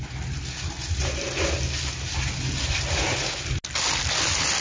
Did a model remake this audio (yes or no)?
no